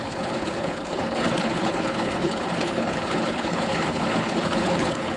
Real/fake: fake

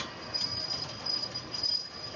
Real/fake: real